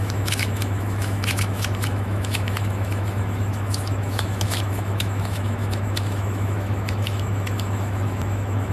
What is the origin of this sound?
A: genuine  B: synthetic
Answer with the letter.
B